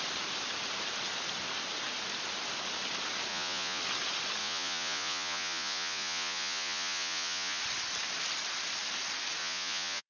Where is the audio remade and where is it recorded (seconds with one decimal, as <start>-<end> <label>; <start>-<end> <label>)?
0.0-3.3 recorded; 3.3-3.8 remade; 3.8-4.4 recorded; 4.4-7.6 remade; 7.6-9.4 recorded; 9.4-10.1 remade